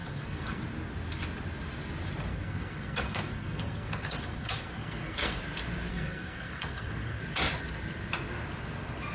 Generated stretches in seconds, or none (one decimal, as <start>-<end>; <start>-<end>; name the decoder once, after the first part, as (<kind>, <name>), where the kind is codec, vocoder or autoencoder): 0.0-0.6 (codec, SNAC); 2.3-5.4; 5.9-7.2